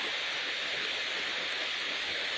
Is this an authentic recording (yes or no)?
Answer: yes